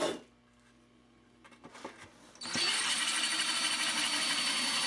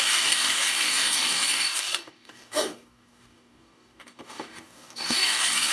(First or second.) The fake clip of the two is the second